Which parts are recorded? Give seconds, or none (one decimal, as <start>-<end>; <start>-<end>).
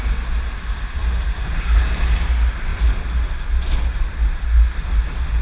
0.0-5.4